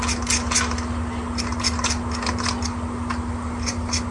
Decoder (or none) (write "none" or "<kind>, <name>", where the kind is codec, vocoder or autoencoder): none